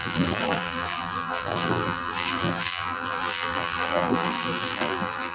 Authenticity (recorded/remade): remade